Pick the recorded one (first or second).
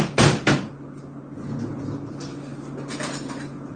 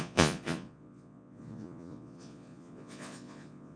first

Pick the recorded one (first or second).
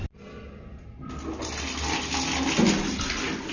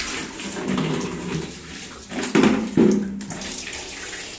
first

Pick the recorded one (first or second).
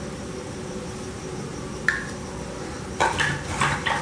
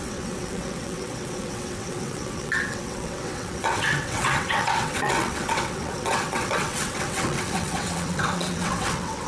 first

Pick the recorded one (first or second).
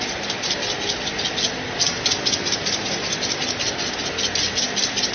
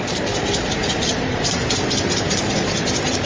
first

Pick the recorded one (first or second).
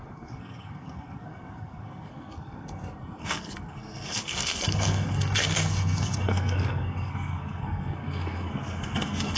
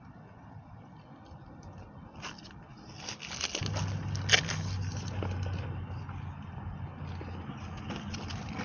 second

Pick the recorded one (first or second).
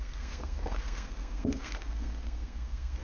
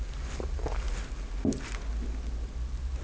second